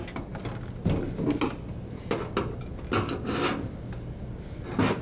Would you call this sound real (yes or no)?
yes